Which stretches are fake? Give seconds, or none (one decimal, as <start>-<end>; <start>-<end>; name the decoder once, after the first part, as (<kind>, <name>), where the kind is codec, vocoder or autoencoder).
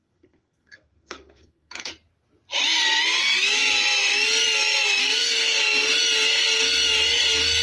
0.0-1.9 (codec, SNAC); 5.0-5.6